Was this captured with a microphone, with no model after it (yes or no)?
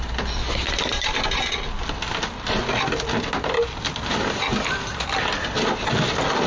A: yes